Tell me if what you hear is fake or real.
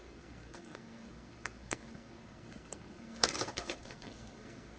fake